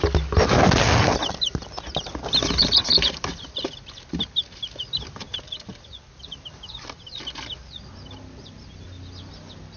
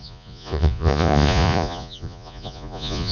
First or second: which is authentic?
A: first